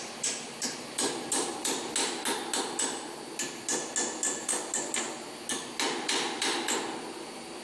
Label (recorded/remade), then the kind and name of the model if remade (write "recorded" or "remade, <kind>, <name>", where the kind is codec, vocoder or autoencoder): recorded